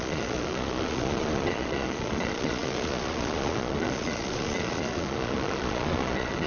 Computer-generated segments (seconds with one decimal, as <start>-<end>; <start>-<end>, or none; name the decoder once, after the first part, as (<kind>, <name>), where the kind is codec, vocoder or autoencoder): 0.0-6.5 (vocoder, Vocos)